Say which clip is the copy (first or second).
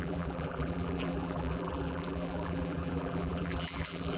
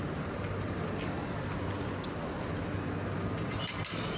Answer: first